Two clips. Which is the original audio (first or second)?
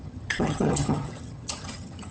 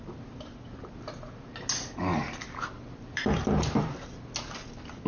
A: second